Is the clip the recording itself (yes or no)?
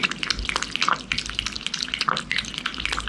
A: yes